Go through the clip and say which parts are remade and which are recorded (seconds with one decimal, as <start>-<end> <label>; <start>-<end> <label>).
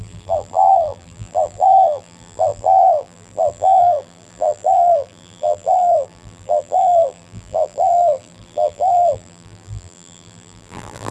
0.0-11.1 remade